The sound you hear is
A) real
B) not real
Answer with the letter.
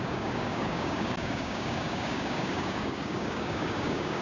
B